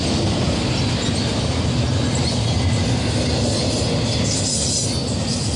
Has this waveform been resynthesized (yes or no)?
no